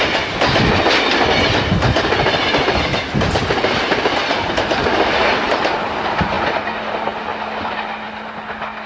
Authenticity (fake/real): real